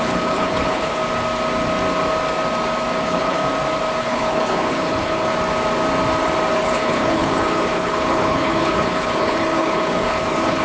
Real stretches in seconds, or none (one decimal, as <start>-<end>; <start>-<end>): 1.0-3.0; 3.4-4.0; 5.3-6.5